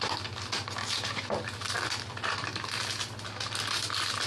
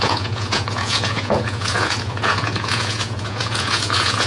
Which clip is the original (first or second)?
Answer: first